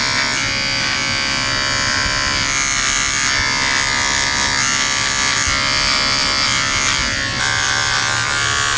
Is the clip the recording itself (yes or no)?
yes